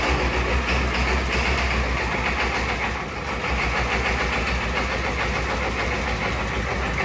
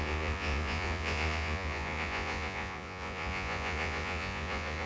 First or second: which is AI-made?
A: second